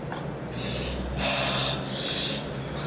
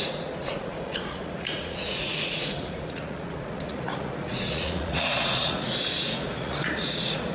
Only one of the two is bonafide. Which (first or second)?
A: first